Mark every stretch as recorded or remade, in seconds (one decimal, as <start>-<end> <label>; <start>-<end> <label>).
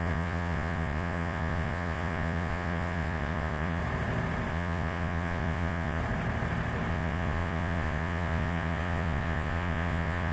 0.0-3.8 remade; 3.8-4.5 recorded; 4.5-6.0 remade; 6.0-6.9 recorded; 6.9-10.3 remade